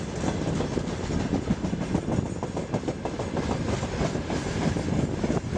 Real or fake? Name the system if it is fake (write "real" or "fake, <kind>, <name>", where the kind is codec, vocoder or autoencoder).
real